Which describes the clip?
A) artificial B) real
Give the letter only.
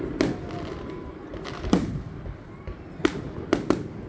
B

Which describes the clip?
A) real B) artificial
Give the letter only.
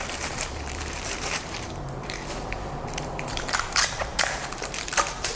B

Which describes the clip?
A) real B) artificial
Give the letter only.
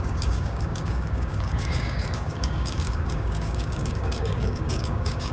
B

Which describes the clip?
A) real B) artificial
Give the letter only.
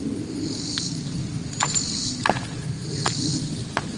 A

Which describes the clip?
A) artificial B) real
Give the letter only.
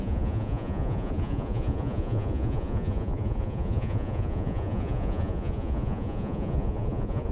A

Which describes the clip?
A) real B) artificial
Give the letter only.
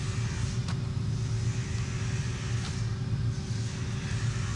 A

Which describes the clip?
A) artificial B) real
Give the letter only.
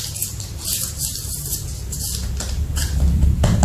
B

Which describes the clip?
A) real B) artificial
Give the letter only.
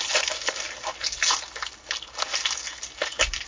A